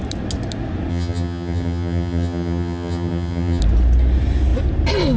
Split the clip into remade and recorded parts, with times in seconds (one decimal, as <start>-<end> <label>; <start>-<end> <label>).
0.0-0.9 recorded; 0.9-3.6 remade; 3.6-5.2 recorded